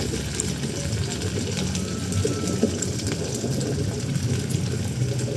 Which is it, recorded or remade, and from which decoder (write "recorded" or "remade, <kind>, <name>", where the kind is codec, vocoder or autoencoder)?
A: recorded